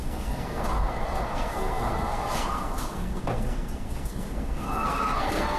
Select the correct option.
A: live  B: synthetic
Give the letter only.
B